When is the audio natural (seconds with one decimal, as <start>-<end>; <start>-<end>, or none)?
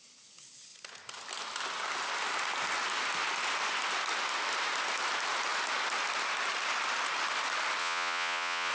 0.0-7.8